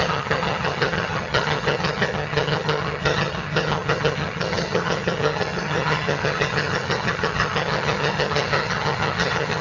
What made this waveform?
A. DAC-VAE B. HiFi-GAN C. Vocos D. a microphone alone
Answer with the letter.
B